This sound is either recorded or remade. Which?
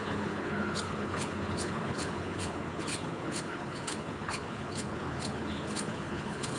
remade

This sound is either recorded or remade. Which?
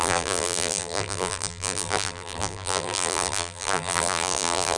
remade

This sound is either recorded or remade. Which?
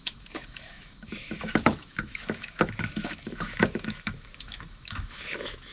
remade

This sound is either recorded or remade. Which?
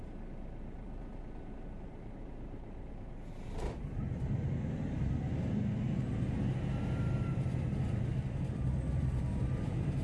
remade